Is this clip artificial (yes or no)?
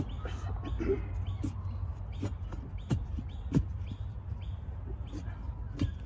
no